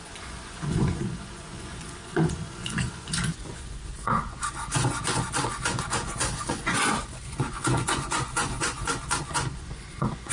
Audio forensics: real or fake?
fake